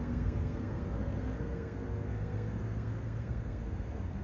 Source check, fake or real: fake